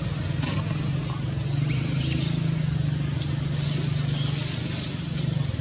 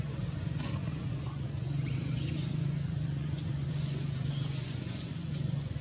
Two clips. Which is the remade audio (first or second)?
second